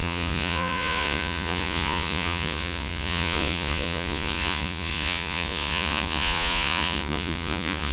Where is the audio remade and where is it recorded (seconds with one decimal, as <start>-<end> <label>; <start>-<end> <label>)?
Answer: 0.0-7.9 remade